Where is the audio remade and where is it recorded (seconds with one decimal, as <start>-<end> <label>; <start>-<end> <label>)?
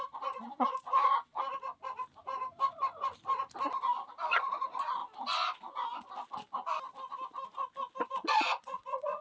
0.0-1.3 remade; 1.3-4.3 recorded; 4.3-5.0 remade; 5.0-8.1 recorded; 8.1-9.2 remade